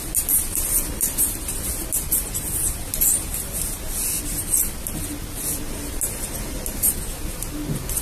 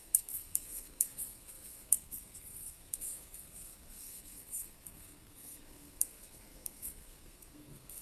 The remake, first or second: second